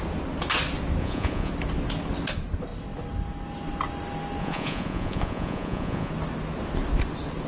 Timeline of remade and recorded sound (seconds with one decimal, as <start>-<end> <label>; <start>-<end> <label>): 0.0-1.0 recorded; 1.0-1.5 remade; 1.5-4.4 recorded; 4.4-6.1 remade; 6.1-7.5 recorded